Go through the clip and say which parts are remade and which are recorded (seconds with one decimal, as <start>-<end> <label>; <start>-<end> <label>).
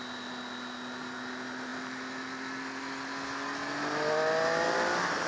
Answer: 0.0-5.3 recorded